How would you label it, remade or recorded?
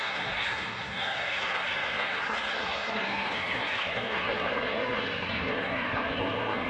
remade